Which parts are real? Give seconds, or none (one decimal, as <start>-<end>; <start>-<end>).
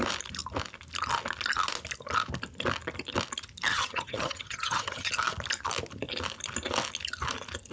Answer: 0.0-3.7; 5.1-7.7